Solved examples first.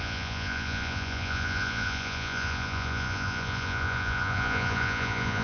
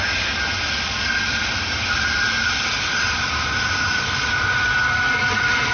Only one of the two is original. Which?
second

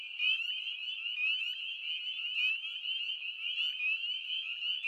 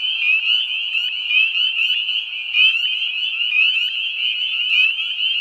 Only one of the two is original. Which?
first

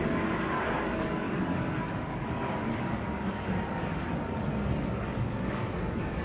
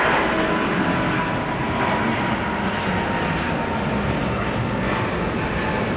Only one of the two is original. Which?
second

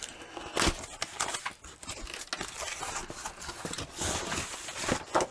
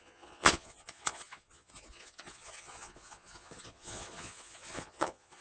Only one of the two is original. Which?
first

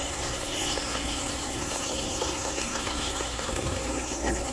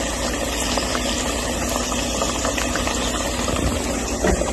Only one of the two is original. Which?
second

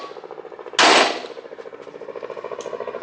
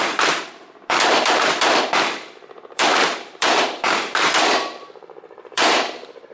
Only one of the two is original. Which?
first